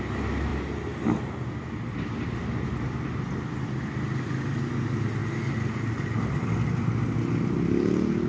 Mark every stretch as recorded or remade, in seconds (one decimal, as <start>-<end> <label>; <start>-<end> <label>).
0.0-8.3 recorded